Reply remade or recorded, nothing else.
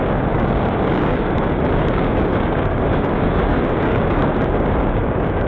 remade